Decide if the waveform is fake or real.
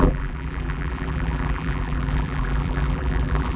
fake